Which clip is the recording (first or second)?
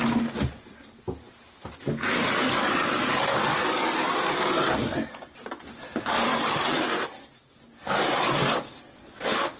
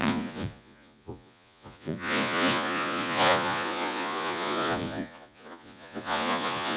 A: first